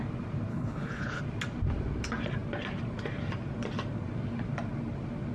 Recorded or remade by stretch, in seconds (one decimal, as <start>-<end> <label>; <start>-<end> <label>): 0.0-0.5 recorded; 0.5-1.2 remade; 1.2-5.3 recorded